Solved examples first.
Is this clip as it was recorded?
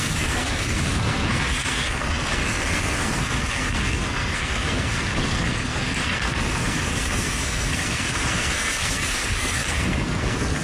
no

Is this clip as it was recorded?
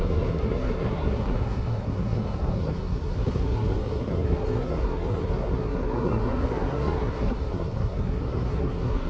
no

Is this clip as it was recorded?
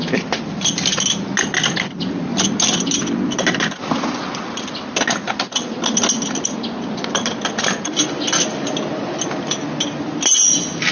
yes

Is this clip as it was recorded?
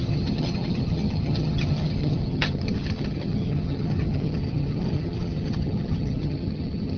no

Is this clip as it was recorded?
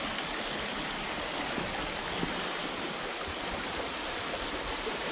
yes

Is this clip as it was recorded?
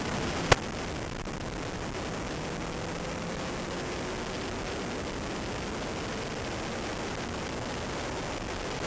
yes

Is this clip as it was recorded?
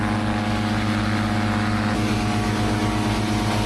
yes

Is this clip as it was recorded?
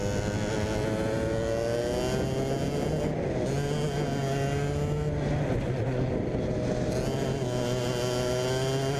yes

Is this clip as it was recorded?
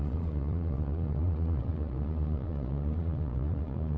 no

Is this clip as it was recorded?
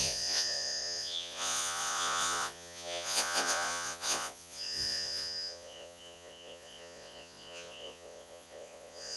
no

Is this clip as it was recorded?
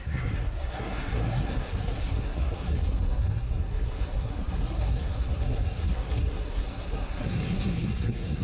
no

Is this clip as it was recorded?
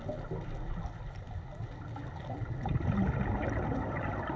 yes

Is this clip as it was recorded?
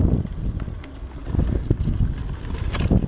yes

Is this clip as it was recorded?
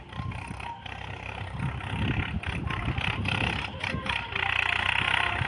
yes